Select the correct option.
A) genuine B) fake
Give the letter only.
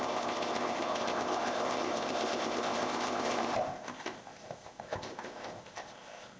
B